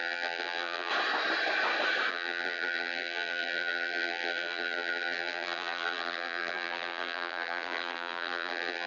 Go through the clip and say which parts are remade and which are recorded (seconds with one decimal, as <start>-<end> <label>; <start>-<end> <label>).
0.0-0.9 remade; 0.9-2.1 recorded; 2.1-8.9 remade

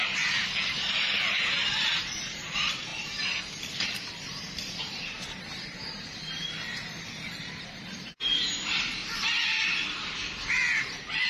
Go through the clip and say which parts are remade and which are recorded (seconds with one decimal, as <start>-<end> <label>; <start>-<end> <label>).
0.0-9.0 remade; 9.0-10.8 recorded; 10.8-11.3 remade

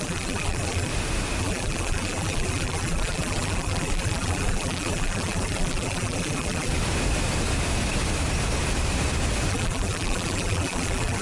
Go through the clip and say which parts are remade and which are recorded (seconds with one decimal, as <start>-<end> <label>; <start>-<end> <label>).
0.0-0.9 remade; 0.9-1.4 recorded; 1.4-6.7 remade; 6.7-9.5 recorded; 9.5-11.2 remade

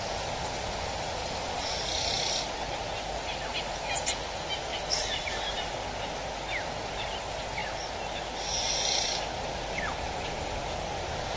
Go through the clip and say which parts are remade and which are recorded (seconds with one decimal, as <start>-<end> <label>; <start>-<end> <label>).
0.0-1.2 recorded; 1.2-1.7 remade; 1.7-4.7 recorded; 4.7-5.7 remade; 5.7-11.4 recorded

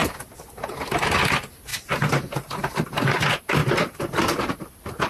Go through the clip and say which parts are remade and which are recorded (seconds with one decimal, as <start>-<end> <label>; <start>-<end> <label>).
0.0-1.1 recorded; 1.1-5.1 remade

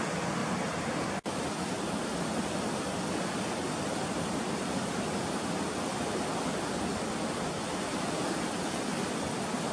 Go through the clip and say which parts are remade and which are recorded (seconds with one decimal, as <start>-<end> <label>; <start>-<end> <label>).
0.0-0.4 recorded; 0.4-1.4 remade; 1.4-9.7 recorded

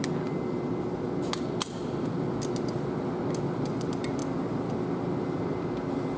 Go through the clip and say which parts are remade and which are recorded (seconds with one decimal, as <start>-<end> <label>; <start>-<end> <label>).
0.0-6.2 recorded